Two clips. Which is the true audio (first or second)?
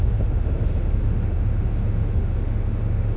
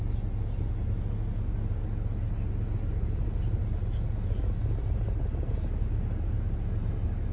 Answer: second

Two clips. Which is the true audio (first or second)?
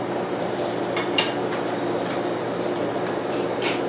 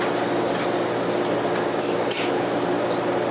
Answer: second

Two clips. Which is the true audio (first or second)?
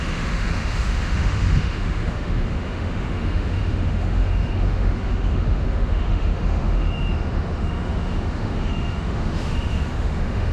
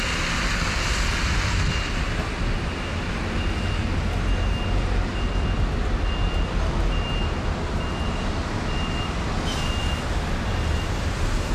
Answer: second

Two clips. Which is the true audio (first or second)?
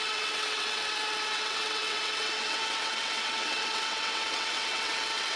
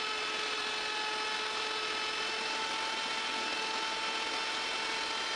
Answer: second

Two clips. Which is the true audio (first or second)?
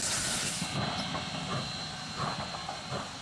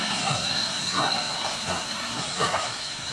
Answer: first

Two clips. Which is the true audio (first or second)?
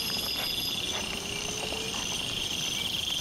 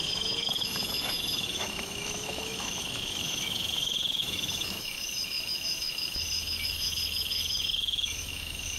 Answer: first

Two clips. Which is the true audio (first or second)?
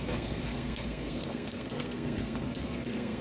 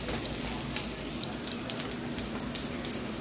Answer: second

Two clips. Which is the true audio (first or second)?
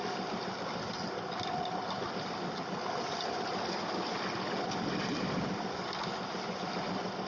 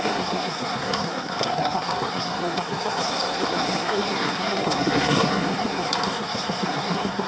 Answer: first